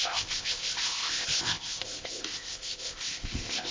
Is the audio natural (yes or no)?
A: no